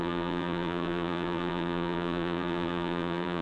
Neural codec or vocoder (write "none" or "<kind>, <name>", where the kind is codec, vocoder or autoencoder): vocoder, BigVGAN v2